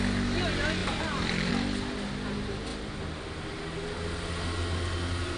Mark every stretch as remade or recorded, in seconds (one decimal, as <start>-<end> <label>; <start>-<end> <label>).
0.0-0.8 recorded; 0.8-1.5 remade; 1.5-5.4 recorded